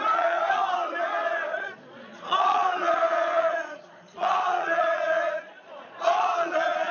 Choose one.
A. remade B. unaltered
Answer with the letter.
A